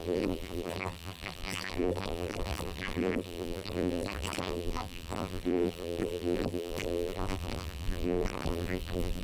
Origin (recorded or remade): remade